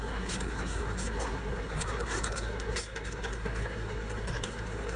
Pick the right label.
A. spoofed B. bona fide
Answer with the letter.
A